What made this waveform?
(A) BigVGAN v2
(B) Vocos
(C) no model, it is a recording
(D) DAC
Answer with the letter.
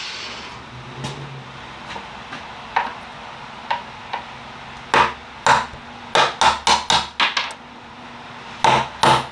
C